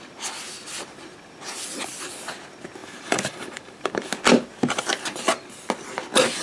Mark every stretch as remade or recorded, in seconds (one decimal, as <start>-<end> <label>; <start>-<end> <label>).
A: 0.0-2.8 recorded; 2.8-4.1 remade; 4.1-6.4 recorded